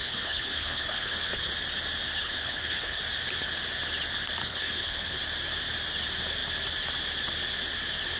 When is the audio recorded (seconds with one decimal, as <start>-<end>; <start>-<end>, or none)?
1.5-2.2; 3.0-4.4; 5.2-8.2